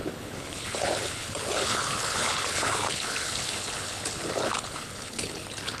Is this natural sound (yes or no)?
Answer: no